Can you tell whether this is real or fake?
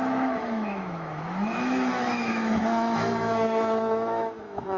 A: fake